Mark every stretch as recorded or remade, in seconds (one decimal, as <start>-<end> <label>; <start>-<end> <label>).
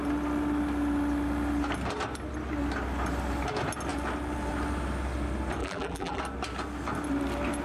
0.0-5.6 recorded; 5.6-6.2 remade; 6.2-7.6 recorded